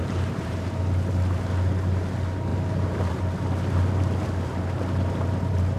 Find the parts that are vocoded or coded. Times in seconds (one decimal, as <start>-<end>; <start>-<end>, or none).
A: 0.0-0.8; 2.5-3.2

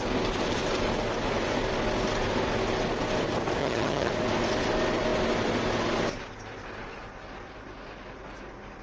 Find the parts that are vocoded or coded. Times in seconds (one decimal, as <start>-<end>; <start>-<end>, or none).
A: 3.6-4.1

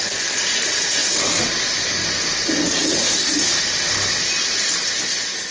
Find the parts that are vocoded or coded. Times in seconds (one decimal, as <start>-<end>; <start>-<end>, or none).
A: none

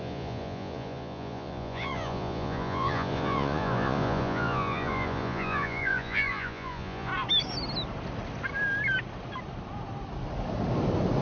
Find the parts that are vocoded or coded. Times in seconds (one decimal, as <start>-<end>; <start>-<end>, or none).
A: 0.0-7.1

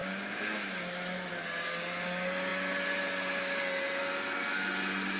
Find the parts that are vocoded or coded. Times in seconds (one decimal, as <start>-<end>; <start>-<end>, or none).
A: 0.0-1.3

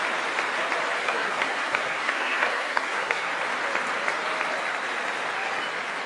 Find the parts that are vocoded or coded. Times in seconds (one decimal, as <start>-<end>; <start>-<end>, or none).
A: 1.0-3.3